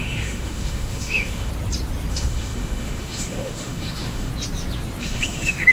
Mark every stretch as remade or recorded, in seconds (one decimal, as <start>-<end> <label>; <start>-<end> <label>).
0.0-1.5 remade; 1.5-2.1 recorded; 2.1-4.3 remade; 4.3-5.0 recorded; 5.0-5.7 remade